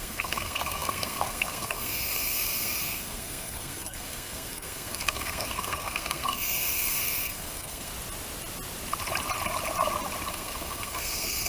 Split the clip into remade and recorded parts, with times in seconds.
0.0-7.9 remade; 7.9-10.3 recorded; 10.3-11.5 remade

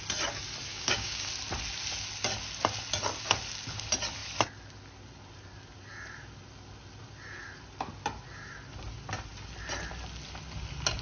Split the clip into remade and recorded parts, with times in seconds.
0.0-0.7 recorded; 0.7-1.3 remade; 1.3-11.0 recorded

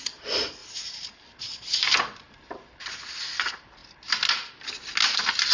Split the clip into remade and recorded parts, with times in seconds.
0.0-0.6 recorded; 0.6-3.0 remade; 3.0-5.5 recorded

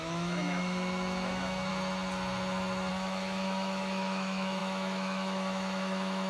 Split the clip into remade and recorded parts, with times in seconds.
0.0-1.7 remade; 1.7-2.9 recorded; 2.9-6.3 remade

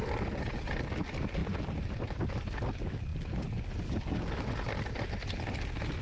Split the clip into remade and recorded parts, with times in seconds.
0.0-6.0 recorded